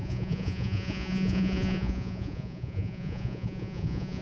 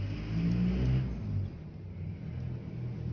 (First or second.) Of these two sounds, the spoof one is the first